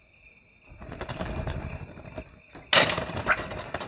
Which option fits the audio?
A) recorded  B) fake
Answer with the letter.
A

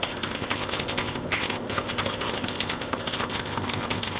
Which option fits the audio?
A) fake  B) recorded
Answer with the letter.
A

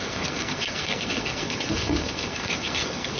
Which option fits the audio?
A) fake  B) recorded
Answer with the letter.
A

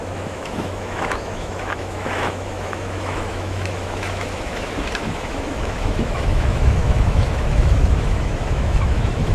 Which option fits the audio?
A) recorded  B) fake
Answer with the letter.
B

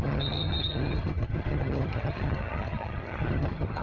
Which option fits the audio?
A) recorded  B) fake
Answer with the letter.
B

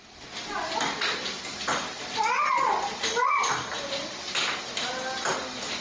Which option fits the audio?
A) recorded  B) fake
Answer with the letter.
A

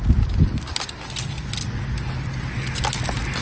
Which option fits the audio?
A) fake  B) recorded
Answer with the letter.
B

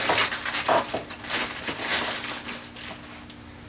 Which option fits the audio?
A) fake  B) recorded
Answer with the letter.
B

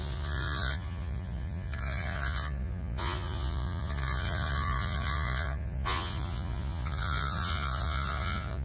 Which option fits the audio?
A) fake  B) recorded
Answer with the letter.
A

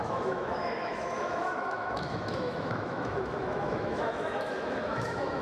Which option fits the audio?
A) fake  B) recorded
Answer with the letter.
A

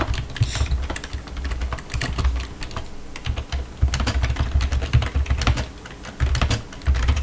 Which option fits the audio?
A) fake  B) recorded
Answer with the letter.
B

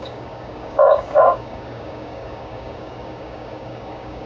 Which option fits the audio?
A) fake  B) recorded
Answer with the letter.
A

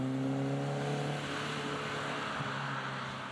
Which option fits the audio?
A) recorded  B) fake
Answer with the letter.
A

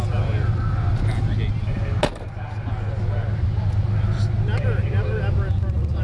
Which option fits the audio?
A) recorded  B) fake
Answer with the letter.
A